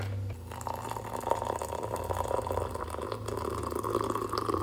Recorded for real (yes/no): yes